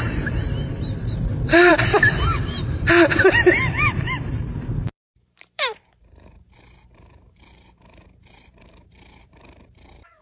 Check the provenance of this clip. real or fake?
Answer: fake